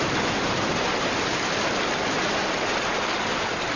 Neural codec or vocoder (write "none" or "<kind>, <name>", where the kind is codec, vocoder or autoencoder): none